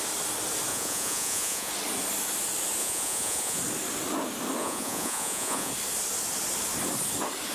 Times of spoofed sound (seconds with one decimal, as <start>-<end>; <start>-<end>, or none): 0.7-1.7; 2.8-3.6; 4.6-5.7